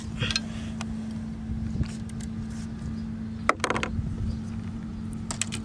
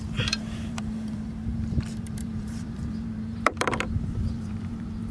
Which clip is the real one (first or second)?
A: first